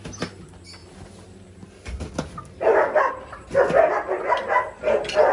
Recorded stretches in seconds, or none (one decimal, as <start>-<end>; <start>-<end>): 0.0-5.3